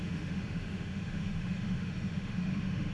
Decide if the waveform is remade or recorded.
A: remade